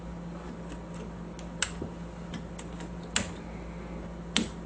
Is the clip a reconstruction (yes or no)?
no